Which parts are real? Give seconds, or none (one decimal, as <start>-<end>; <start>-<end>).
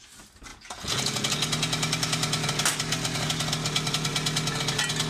0.0-0.5; 1.3-5.1